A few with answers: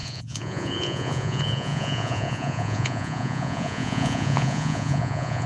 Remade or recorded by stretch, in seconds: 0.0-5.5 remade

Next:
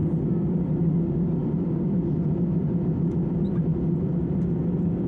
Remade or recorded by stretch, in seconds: 0.0-5.1 recorded